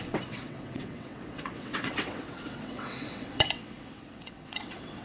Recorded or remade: remade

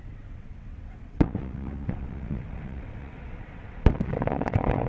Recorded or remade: remade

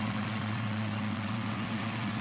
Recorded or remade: remade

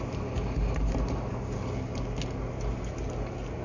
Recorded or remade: recorded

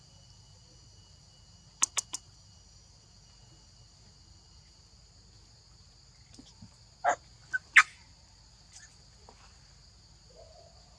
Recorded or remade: recorded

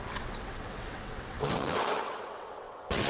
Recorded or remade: remade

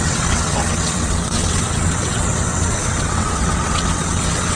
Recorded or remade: remade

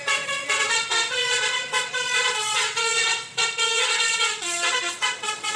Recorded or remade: remade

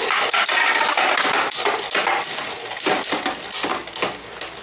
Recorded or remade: recorded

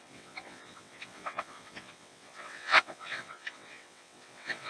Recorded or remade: remade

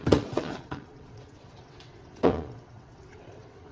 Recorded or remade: remade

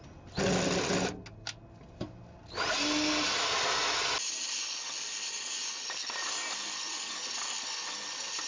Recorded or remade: recorded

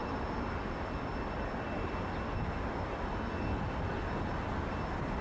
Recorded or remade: recorded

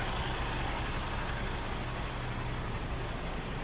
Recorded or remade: recorded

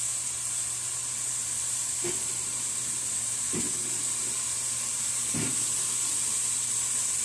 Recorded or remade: recorded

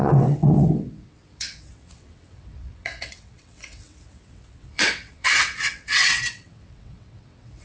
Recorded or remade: remade